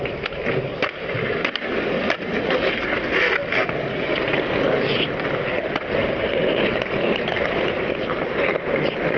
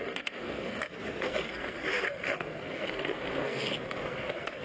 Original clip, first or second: first